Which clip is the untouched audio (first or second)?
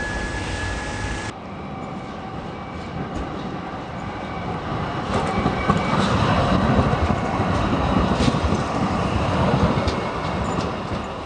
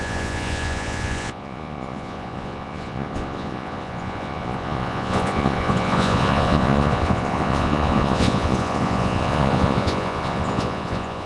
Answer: first